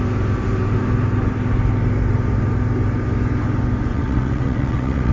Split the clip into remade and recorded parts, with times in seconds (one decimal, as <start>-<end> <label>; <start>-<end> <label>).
0.0-3.9 recorded; 3.9-5.1 remade

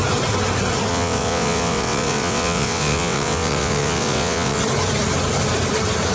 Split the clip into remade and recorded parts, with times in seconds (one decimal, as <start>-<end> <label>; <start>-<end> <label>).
0.0-0.9 recorded; 0.9-4.6 remade; 4.6-6.1 recorded